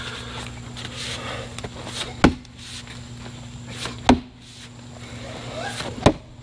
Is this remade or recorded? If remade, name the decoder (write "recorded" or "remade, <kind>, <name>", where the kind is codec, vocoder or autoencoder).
recorded